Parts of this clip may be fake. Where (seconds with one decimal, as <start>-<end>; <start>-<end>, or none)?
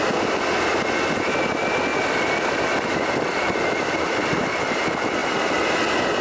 none